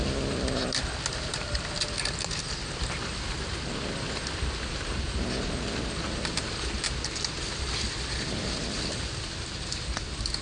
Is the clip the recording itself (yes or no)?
yes